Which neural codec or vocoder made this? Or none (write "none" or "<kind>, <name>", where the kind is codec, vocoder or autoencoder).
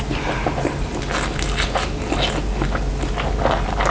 none